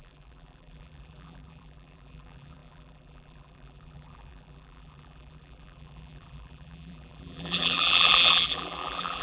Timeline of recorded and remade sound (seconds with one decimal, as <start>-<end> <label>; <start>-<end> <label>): 0.0-9.2 remade

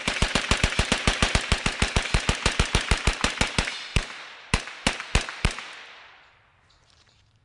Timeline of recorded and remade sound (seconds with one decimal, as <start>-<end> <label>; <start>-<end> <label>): 0.0-3.9 remade; 3.9-6.3 recorded; 6.3-7.4 remade